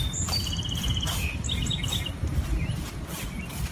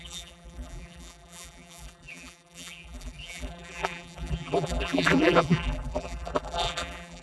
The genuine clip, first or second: first